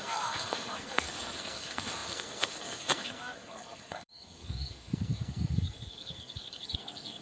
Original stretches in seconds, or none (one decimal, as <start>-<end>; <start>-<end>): none